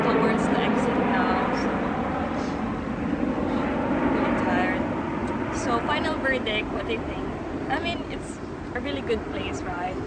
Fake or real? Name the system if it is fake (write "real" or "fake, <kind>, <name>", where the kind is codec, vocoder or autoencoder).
real